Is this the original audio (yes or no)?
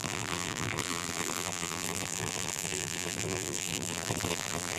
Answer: no